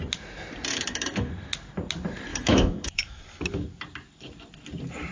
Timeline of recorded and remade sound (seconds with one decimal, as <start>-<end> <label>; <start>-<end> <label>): 0.0-0.7 recorded; 0.7-1.3 remade; 1.3-2.3 recorded; 2.3-3.2 remade; 3.2-5.1 recorded